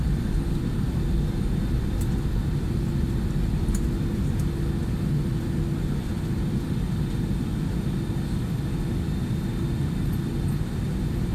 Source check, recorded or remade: recorded